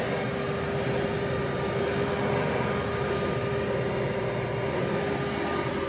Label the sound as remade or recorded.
recorded